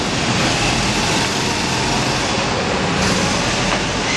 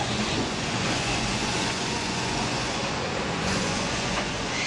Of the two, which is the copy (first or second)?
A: second